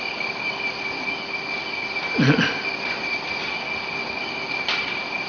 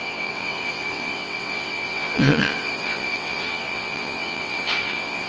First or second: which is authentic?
first